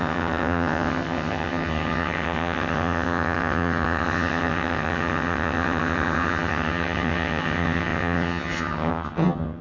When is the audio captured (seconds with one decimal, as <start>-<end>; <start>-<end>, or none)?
none